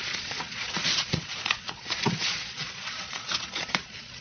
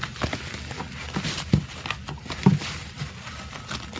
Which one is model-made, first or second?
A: first